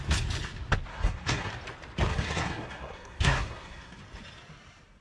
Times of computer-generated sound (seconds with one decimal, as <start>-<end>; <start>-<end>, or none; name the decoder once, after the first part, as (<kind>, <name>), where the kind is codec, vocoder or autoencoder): 0.9-1.5 (codec, SNAC); 2.1-4.0